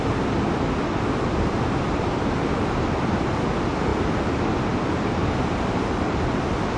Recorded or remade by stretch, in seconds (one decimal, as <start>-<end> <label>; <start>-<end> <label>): 0.0-6.8 recorded